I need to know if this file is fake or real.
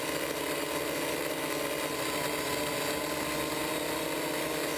real